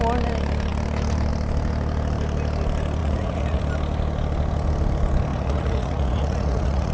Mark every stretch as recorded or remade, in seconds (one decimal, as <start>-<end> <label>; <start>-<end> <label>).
0.0-3.0 recorded; 3.0-3.6 remade; 3.6-5.3 recorded; 5.3-6.9 remade